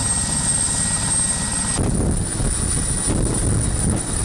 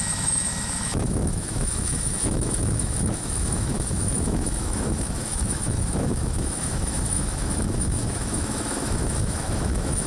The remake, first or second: second